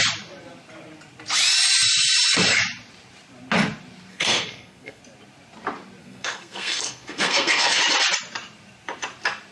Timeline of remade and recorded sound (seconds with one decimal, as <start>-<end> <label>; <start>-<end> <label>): 0.0-4.1 recorded; 4.1-5.0 remade; 5.0-6.0 recorded; 6.0-7.8 remade; 7.8-9.5 recorded